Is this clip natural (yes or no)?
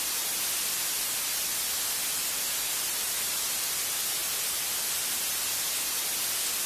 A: yes